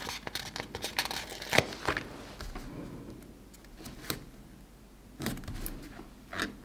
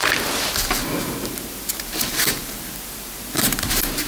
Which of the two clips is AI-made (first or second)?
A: second